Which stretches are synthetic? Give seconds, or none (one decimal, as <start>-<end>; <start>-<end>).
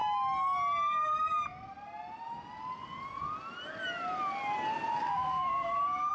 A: 5.0-6.1